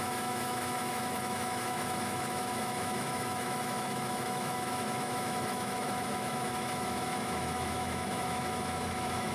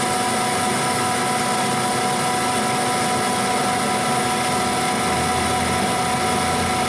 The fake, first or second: first